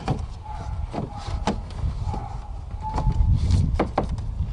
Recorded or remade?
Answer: recorded